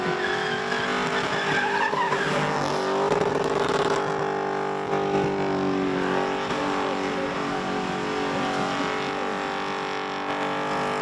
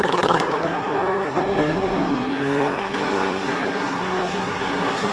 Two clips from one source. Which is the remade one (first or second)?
second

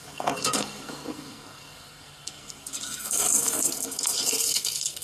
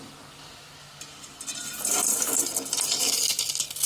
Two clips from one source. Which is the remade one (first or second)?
first